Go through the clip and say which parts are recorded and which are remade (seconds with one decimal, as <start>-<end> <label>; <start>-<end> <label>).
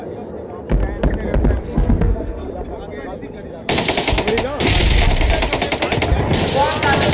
0.0-1.6 recorded; 1.6-2.5 remade; 2.5-7.1 recorded